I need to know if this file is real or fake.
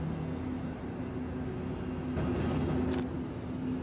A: real